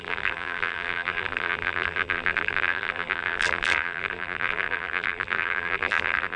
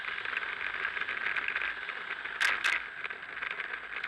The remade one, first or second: first